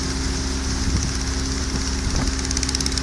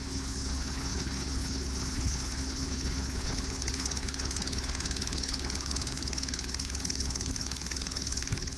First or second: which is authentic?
first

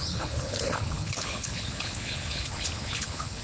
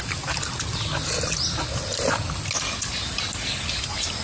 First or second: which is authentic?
second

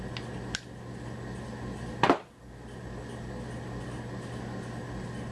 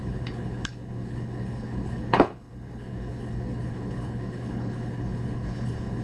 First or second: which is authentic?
first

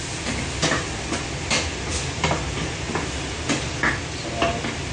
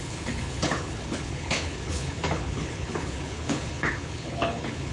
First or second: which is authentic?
first